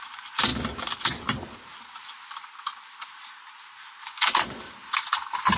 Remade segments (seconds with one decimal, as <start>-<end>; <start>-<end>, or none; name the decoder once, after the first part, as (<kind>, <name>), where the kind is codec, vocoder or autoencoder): none